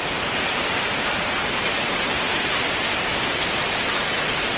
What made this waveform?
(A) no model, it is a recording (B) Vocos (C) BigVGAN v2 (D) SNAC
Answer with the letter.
C